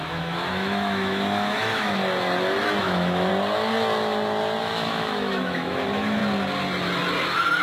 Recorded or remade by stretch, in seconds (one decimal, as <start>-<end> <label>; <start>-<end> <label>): 0.0-2.0 remade; 2.0-2.8 recorded; 2.8-3.3 remade; 3.3-4.6 recorded; 4.6-6.2 remade; 6.2-7.6 recorded